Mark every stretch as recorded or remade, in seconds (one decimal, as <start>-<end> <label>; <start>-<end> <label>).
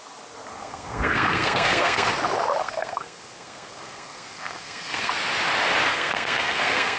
0.0-0.6 recorded; 0.6-2.1 remade; 2.1-2.6 recorded; 2.6-5.1 remade; 5.1-5.9 recorded; 5.9-7.0 remade